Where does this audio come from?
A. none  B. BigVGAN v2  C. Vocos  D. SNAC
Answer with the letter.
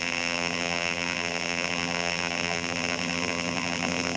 B